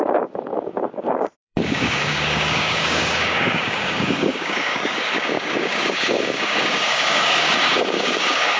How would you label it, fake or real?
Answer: fake